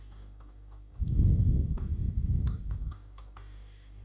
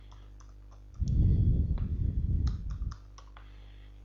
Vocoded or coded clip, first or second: first